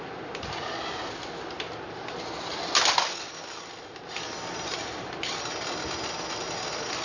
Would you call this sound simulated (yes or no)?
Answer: no